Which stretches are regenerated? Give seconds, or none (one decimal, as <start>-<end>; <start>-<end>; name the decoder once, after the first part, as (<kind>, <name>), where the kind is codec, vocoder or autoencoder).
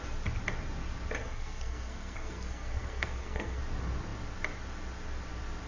1.2-3.6 (codec, SNAC)